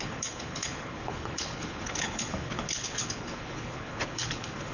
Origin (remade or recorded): remade